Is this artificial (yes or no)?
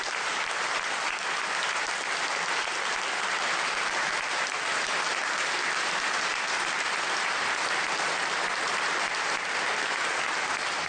no